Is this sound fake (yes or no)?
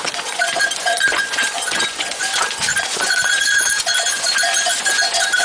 yes